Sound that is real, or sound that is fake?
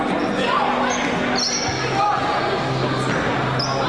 real